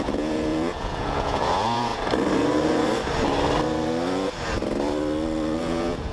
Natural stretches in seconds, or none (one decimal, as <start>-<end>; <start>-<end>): 1.9-5.6